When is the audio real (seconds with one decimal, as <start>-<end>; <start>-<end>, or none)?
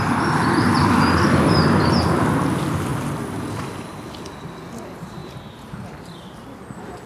0.0-7.1